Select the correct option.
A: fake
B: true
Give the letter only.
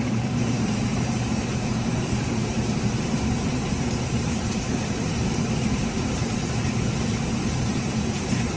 A